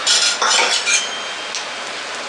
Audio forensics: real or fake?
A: real